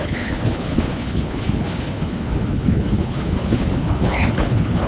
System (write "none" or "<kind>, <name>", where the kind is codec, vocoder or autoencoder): codec, HILCodec